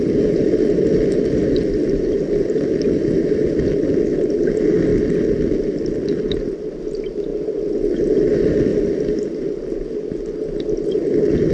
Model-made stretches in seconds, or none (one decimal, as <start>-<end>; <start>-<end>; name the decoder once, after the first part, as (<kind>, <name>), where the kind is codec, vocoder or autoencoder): none